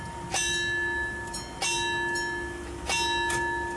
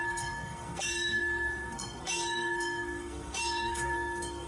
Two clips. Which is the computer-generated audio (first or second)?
second